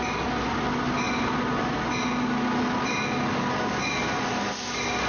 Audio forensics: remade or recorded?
recorded